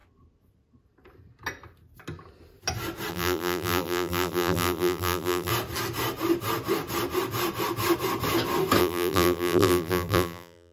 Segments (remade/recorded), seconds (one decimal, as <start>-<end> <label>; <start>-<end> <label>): 0.0-3.1 recorded; 3.1-5.5 remade; 5.5-8.8 recorded; 8.8-10.7 remade